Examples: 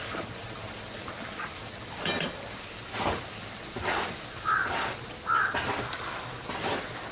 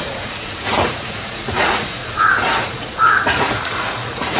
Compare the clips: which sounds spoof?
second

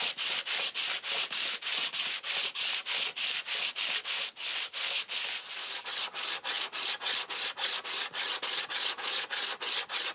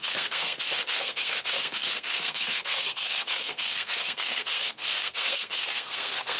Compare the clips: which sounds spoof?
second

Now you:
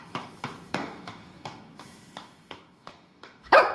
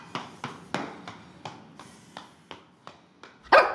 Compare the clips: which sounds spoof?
first